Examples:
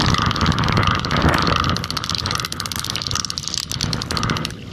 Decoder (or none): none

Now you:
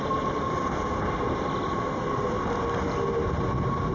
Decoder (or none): none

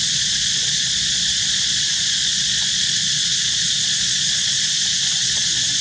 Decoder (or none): vocoder, Vocos